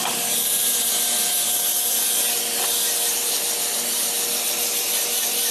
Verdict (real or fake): real